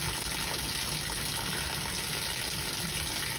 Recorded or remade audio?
recorded